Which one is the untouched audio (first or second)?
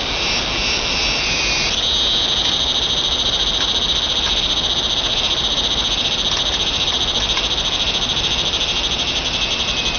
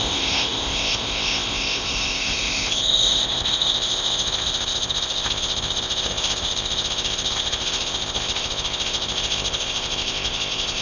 first